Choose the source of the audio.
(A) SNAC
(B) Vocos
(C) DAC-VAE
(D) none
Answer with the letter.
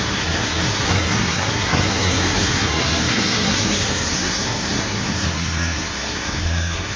A